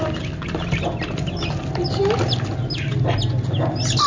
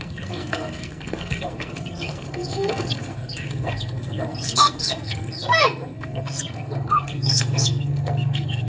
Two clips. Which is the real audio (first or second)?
first